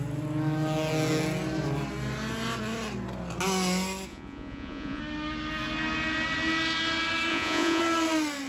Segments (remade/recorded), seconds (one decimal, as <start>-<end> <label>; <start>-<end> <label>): 0.0-4.1 recorded; 4.1-5.0 remade; 5.0-7.3 recorded; 7.3-7.8 remade; 7.8-8.5 recorded